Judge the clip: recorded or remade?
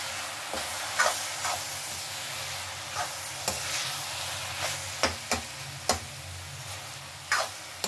recorded